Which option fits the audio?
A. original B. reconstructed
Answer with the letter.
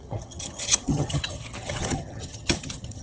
B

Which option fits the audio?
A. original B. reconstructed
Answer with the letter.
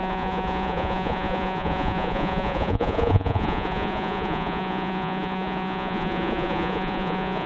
B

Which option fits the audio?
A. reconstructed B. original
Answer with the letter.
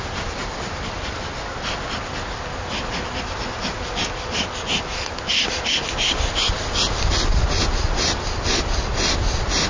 B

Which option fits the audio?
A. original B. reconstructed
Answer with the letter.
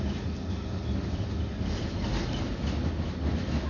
A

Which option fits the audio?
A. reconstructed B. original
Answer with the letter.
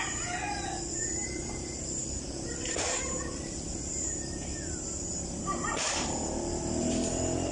A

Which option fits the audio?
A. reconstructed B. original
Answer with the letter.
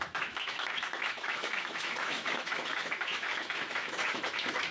A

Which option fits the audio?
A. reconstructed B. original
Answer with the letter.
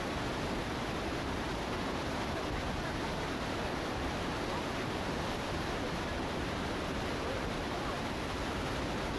A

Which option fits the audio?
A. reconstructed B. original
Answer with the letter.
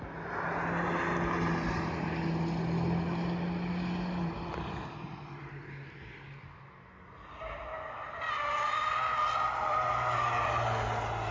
B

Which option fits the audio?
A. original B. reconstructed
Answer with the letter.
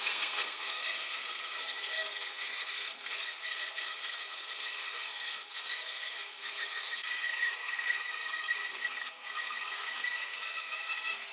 B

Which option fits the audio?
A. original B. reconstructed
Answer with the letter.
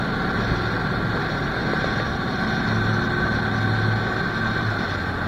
A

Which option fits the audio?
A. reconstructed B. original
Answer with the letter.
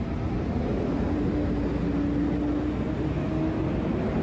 B